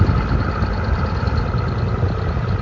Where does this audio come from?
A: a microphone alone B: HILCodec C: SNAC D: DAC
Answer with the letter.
A